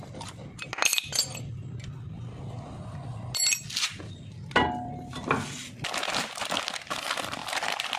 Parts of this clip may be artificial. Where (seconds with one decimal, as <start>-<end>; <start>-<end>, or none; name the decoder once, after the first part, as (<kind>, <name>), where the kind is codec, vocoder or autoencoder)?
none